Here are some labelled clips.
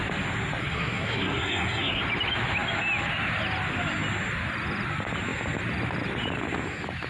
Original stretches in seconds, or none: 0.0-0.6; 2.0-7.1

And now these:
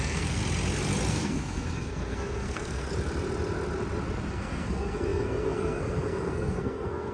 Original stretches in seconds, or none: 0.4-1.1; 2.9-4.3

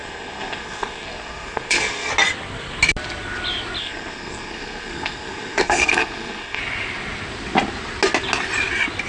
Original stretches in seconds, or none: 2.1-3.8; 6.6-9.1

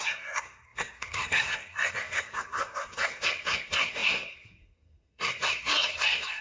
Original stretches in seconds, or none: none

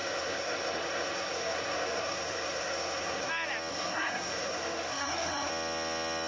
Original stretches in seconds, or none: 3.3-3.7; 5.5-6.3